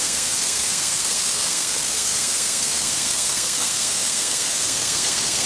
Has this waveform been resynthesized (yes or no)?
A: yes